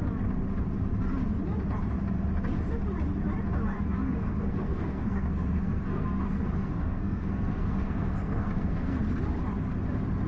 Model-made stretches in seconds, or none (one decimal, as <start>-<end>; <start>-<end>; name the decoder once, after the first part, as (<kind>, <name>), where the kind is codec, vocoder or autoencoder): 4.0-9.2 (codec, SNAC)